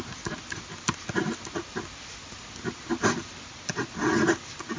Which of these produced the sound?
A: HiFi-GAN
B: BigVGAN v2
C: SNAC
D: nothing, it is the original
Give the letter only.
D